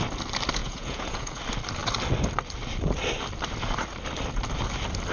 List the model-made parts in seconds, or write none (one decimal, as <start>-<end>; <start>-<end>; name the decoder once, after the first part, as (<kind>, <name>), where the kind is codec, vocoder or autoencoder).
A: 0.6-1.4 (vocoder, Vocos)